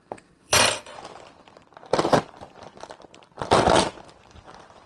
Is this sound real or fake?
fake